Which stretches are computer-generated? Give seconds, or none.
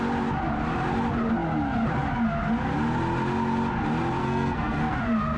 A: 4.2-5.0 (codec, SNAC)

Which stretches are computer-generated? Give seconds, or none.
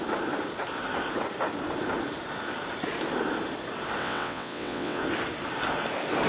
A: 4.0-5.0 (vocoder, WaveNeXt)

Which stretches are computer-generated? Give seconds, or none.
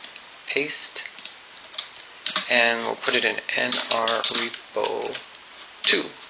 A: 0.4-1.9 (vocoder, BigVGAN v2)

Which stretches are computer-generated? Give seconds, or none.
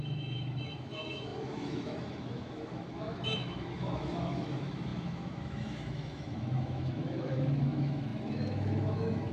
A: 0.0-9.3 (autoencoder, DAC-VAE)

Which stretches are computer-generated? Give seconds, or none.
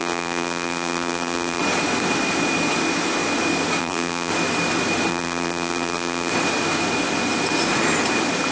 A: 0.0-1.6 (vocoder, BigVGAN v2); 3.8-4.3; 5.1-6.3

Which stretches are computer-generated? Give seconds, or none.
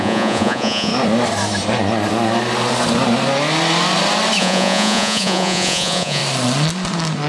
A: 0.0-0.9 (vocoder, Vocos); 4.4-6.2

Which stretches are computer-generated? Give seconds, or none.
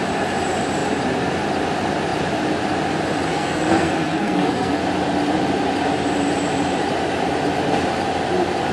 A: 3.3-4.8 (codec, SNAC)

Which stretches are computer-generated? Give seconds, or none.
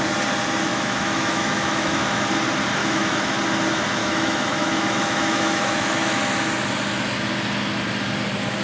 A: 0.7-2.2 (autoencoder, DAC-VAE); 2.8-3.4; 4.0-6.2